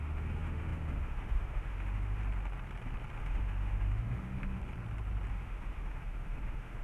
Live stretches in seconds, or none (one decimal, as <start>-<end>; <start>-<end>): 2.2-3.2; 4.6-5.3